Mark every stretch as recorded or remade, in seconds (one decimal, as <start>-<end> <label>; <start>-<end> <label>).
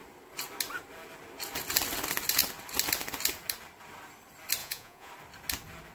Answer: 0.0-4.6 recorded; 4.6-5.1 remade; 5.1-5.9 recorded